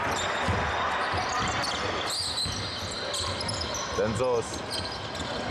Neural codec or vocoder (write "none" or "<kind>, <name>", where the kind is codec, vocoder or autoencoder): none